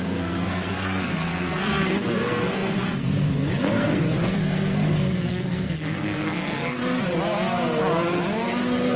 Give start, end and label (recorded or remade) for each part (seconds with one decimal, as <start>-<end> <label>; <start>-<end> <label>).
0.0-6.8 remade; 6.8-9.0 recorded